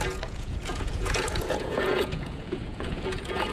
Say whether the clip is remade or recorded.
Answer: remade